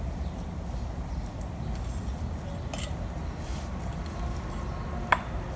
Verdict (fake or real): real